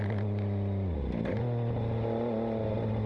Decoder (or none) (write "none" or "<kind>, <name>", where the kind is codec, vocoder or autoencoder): none